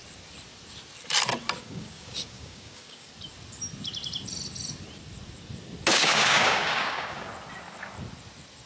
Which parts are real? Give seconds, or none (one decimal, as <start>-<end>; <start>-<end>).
0.0-1.6; 3.1-5.9; 7.3-8.7